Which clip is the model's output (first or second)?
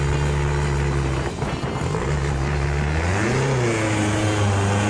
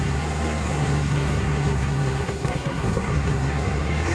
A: second